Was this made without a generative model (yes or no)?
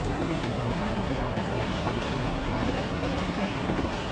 no